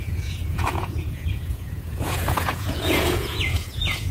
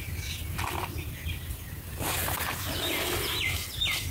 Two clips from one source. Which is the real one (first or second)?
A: second